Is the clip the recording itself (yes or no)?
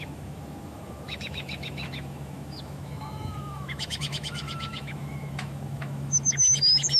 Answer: no